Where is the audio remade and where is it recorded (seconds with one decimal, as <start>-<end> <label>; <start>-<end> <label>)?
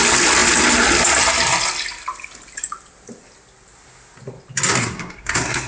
0.0-4.8 recorded; 4.8-5.7 remade